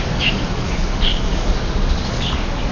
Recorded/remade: remade